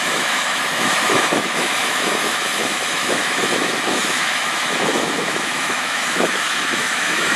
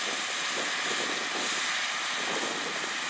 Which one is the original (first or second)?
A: second